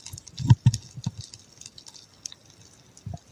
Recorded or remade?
recorded